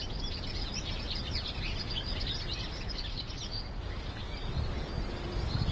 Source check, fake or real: real